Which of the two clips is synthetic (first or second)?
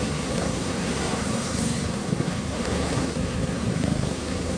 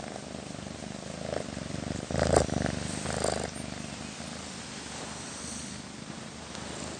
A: first